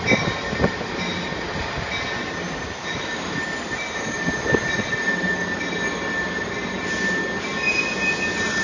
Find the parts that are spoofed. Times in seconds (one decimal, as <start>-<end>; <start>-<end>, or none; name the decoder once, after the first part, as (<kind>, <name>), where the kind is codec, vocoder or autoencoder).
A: 2.8-3.4 (autoencoder, DAC-VAE)